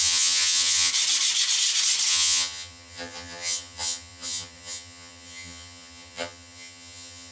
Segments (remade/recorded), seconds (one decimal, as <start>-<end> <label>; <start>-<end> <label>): 0.0-0.9 remade; 0.9-2.1 recorded; 2.1-7.3 remade